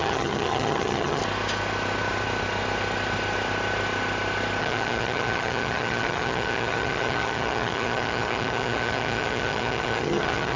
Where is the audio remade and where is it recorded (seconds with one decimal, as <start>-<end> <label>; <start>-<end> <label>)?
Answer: 0.0-1.2 remade; 1.2-4.6 recorded; 4.6-10.6 remade